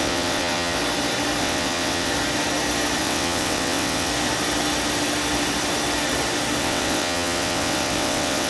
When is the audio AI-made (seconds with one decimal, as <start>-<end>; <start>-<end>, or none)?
0.0-0.8; 1.4-2.1; 3.0-4.1; 6.6-8.5